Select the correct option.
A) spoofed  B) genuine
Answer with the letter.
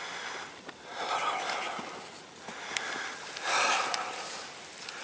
B